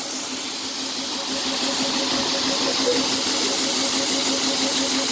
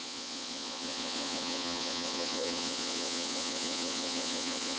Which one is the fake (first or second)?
second